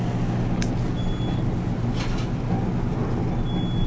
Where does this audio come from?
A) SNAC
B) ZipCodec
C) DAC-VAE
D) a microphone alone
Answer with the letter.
D